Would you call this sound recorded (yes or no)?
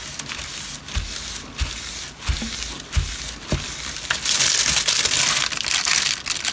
yes